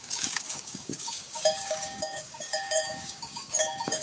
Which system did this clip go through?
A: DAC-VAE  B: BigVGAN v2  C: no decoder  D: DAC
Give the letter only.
D